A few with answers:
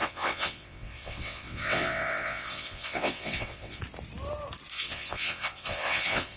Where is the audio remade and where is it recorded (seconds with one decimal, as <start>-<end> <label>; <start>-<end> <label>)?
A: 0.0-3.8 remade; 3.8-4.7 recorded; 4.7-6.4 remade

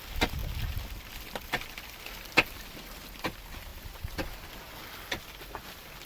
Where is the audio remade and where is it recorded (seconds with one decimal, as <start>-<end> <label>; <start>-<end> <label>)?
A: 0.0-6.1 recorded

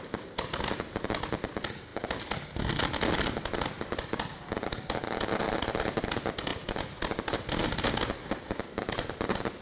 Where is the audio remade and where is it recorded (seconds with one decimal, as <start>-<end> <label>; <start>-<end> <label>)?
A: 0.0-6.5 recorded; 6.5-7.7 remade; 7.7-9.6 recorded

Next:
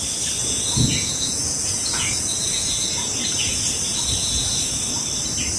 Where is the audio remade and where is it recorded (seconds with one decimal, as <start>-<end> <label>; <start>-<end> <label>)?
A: 0.0-0.4 recorded; 0.4-3.8 remade; 3.8-4.2 recorded; 4.2-4.8 remade; 4.8-5.6 recorded